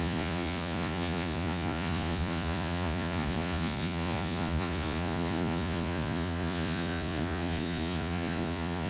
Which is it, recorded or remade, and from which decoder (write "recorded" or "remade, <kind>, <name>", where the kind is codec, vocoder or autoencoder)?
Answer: remade, vocoder, Vocos